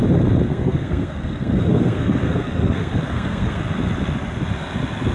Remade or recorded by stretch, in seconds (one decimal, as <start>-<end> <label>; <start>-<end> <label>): 0.0-0.5 recorded; 0.5-3.6 remade; 3.6-5.1 recorded